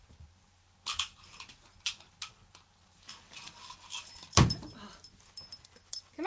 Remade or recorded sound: recorded